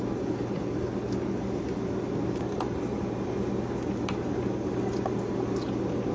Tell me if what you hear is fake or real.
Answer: real